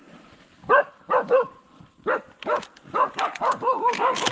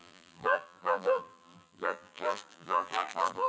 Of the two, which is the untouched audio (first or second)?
first